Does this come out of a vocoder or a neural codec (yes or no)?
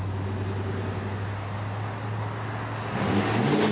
no